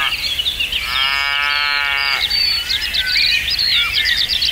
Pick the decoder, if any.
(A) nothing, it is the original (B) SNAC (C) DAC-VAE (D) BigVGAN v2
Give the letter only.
A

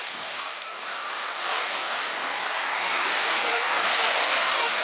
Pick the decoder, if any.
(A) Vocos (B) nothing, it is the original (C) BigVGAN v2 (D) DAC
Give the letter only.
D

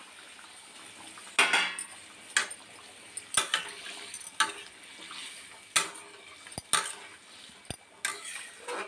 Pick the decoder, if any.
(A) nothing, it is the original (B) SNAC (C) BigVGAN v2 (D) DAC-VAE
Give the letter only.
A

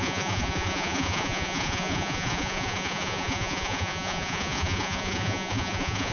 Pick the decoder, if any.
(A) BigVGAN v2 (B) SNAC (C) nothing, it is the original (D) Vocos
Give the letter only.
D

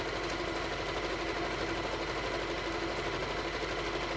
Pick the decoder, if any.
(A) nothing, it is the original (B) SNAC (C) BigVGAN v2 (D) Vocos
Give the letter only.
A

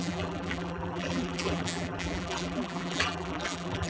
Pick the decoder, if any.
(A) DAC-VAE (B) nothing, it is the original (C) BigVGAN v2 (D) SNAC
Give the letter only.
C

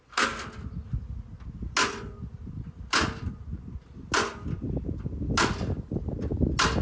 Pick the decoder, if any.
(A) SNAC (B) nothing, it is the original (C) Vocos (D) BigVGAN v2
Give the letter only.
B